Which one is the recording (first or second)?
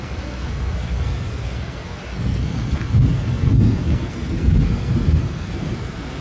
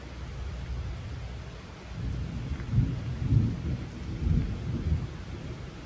second